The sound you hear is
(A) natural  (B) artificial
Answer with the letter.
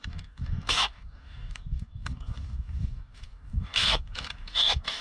B